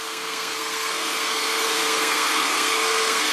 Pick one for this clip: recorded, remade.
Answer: remade